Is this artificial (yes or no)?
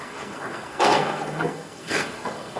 yes